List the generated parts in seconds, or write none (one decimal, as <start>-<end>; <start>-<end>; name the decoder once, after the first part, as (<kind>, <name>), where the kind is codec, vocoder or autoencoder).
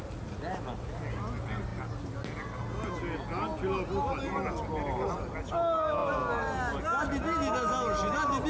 none